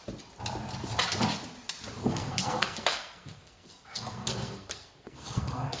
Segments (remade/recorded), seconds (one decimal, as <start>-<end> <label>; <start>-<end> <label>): 0.0-2.0 recorded; 2.0-5.8 remade